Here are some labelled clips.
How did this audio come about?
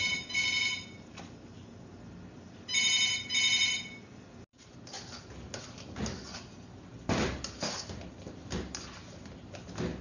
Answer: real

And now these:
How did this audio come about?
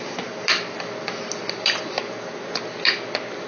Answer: real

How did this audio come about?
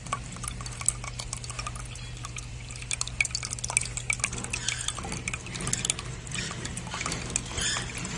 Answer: real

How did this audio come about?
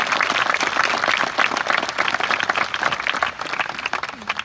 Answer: real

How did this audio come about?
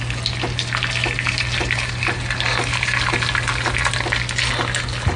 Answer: real